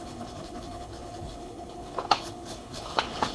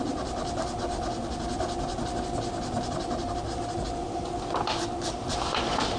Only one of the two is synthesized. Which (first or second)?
first